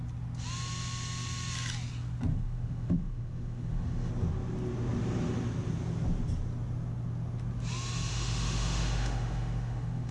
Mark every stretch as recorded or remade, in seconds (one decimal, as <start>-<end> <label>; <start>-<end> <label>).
0.0-2.3 recorded; 2.3-4.1 remade; 4.1-8.1 recorded; 8.1-10.1 remade